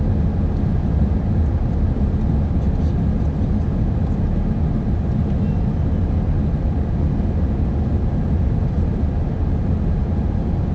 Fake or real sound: real